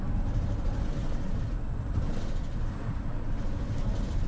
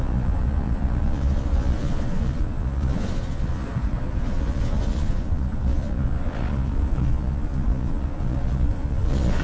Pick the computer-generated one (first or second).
second